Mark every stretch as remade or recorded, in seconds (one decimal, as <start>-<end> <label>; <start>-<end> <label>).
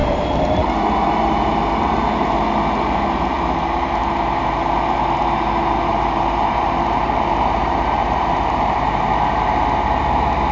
0.0-2.1 remade; 2.1-4.0 recorded; 4.0-5.2 remade; 5.2-5.9 recorded; 5.9-9.5 remade; 9.5-10.5 recorded